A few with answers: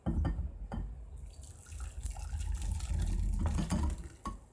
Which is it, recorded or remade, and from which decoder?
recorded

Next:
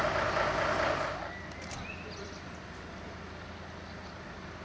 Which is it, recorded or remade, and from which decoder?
recorded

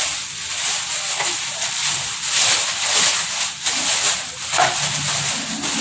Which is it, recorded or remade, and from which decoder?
recorded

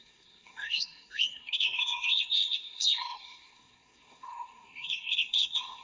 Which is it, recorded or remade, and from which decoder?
remade, codec, SNAC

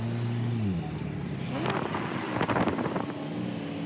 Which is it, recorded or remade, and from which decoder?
recorded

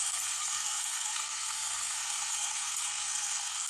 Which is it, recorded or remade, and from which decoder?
remade, codec, SNAC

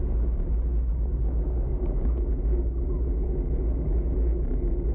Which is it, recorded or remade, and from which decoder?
recorded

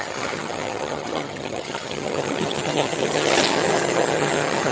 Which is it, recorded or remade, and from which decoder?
remade, vocoder, HiFi-GAN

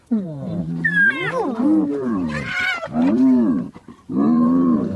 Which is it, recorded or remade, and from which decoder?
remade, vocoder, BigVGAN v2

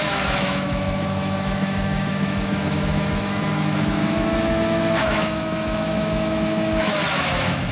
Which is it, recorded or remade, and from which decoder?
remade, autoencoder, DAC-VAE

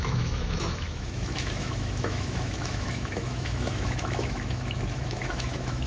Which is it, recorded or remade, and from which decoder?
remade, autoencoder, DAC-VAE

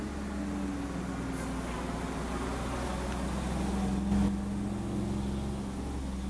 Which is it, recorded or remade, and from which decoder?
recorded